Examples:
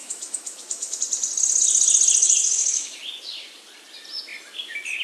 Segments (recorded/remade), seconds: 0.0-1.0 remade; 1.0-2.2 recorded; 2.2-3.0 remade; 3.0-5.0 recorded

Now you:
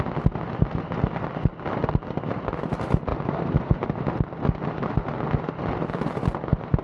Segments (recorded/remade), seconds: 0.0-6.8 recorded

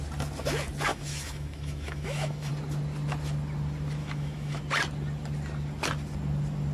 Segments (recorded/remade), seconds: 0.0-0.9 recorded; 0.9-2.5 remade; 2.5-4.0 recorded; 4.0-4.6 remade; 4.6-6.7 recorded